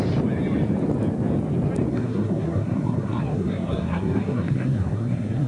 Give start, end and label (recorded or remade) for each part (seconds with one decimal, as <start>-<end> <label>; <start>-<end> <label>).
0.0-1.9 recorded; 1.9-5.5 remade